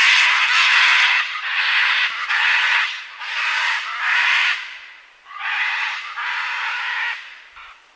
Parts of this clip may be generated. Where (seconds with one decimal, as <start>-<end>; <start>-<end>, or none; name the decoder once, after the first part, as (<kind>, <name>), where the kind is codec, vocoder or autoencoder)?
0.7-1.6 (vocoder, HiFi-GAN); 2.4-3.0; 5.3-6.0